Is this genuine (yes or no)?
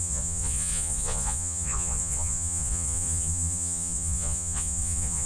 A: no